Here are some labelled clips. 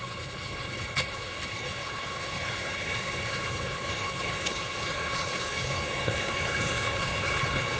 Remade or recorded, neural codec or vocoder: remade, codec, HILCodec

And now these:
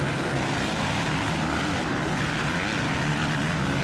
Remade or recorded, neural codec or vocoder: recorded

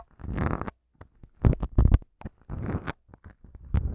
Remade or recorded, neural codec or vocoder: recorded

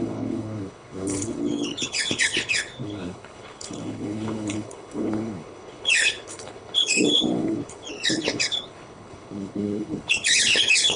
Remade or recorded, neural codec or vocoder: remade, codec, HILCodec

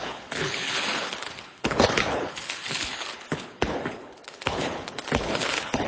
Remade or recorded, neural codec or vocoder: remade, codec, HILCodec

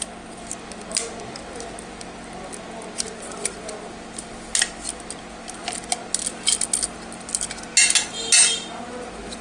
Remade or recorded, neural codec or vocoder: recorded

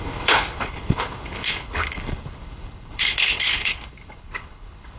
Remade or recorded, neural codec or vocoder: remade, codec, HILCodec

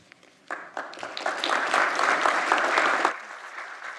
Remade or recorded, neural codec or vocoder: recorded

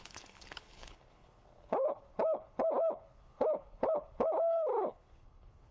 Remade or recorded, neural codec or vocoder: remade, codec, HILCodec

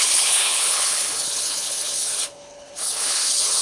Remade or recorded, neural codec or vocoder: remade, codec, HILCodec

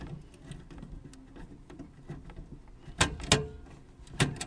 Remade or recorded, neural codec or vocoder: recorded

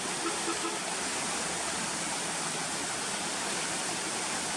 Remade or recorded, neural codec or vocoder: recorded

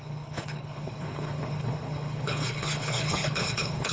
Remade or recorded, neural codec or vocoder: remade, codec, HILCodec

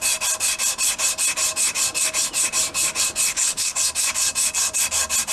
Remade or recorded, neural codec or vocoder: recorded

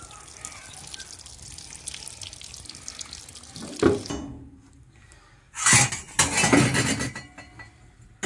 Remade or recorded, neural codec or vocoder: recorded